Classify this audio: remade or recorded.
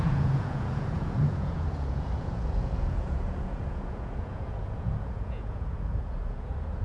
remade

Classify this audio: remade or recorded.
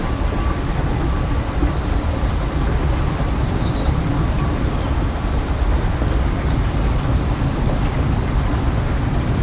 recorded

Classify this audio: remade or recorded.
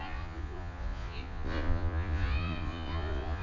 remade